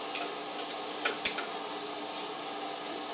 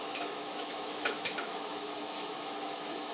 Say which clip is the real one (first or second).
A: first